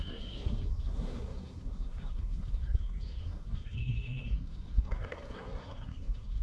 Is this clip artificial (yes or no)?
yes